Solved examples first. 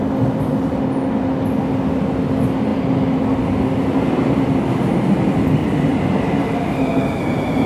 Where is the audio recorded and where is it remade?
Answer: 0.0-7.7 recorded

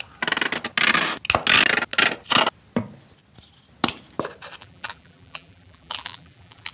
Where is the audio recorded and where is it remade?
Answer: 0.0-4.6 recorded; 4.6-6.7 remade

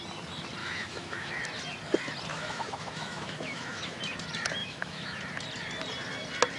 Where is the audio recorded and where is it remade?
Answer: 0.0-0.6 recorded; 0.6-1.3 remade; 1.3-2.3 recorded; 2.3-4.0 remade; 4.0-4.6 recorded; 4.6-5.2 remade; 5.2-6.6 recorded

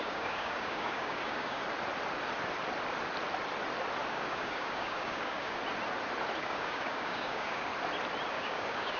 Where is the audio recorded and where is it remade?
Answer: 0.0-1.6 remade; 1.6-4.1 recorded; 4.1-5.6 remade; 5.6-6.4 recorded; 6.4-7.7 remade; 7.7-8.3 recorded; 8.3-9.0 remade

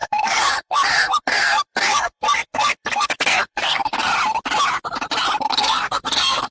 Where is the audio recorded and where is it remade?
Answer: 0.0-4.1 remade; 4.1-5.4 recorded; 5.4-6.5 remade

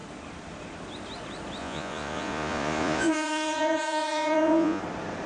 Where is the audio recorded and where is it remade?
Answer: 0.0-1.6 recorded; 1.6-4.8 remade; 4.8-5.3 recorded